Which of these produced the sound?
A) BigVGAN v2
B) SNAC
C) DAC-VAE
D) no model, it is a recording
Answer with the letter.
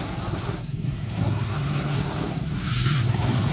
B